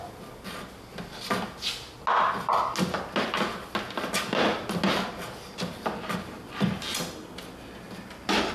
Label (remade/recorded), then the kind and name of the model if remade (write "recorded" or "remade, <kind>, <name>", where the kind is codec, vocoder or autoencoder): recorded